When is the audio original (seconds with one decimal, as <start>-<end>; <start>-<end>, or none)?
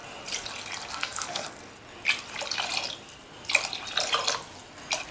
0.0-0.9; 1.6-5.1